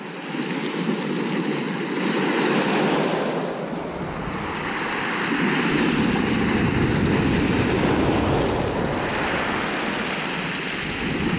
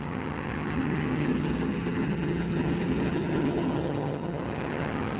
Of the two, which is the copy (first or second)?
second